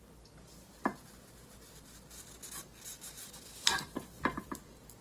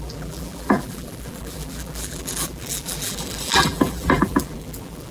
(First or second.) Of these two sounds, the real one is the first